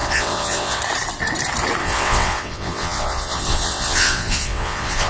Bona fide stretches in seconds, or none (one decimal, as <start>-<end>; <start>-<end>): 0.8-1.8